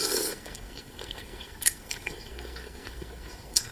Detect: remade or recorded remade